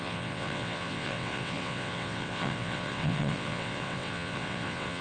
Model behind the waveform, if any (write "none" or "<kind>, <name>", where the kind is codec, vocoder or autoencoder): vocoder, WaveNeXt